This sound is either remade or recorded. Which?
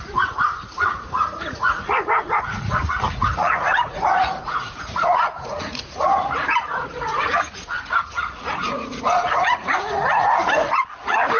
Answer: remade